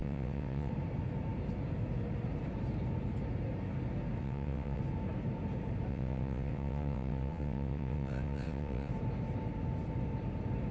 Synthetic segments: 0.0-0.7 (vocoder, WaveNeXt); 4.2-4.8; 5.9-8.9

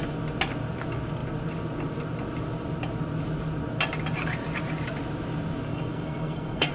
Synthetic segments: 5.7-6.7 (codec, SNAC)

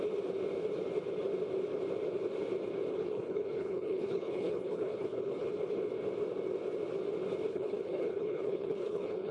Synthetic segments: 2.9-5.5 (codec, HILCodec); 7.5-9.3

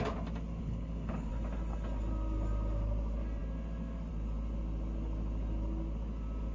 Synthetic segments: 0.6-1.3 (codec, HILCodec)

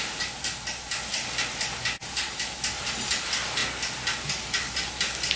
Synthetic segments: none

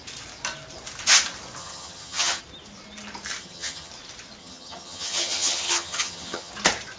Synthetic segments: 1.6-2.4 (vocoder, HiFi-GAN); 3.4-3.9; 4.4-6.5

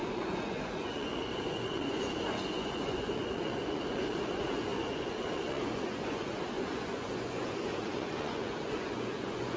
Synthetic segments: 0.0-9.6 (vocoder, Vocos)